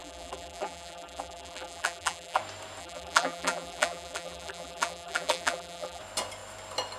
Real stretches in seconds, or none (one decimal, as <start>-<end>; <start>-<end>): 2.4-2.8; 6.0-7.0